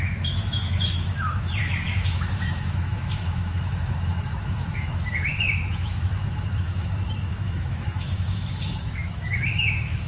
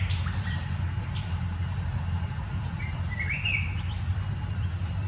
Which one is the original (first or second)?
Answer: second